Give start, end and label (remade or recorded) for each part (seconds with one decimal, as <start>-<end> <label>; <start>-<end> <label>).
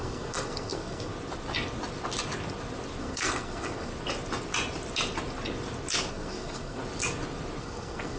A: 0.0-1.1 remade; 1.1-3.0 recorded; 3.0-3.9 remade; 3.9-6.1 recorded; 6.1-6.8 remade; 6.8-7.6 recorded; 7.6-8.2 remade